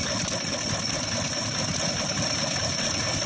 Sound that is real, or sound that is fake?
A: real